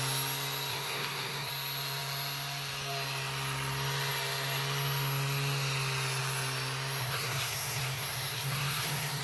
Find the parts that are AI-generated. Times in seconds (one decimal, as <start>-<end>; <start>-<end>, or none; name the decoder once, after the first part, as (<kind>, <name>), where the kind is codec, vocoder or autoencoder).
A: 0.7-1.5 (codec, SNAC); 7.0-9.2

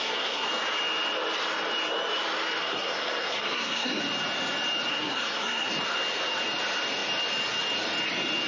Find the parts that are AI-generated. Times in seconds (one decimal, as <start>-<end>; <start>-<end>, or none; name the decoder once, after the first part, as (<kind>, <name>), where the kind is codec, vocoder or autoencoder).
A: 0.0-0.5 (codec, SNAC); 2.6-4.0; 4.9-5.7